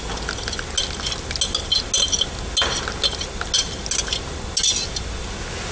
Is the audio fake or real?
real